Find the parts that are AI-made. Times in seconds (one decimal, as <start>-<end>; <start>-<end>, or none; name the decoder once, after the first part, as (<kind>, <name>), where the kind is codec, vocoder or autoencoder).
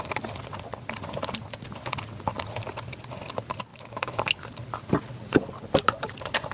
3.7-4.2 (autoencoder, DAC-VAE)